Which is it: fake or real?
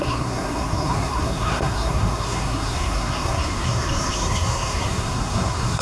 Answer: fake